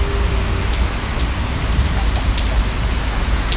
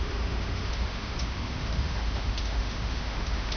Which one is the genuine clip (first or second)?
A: first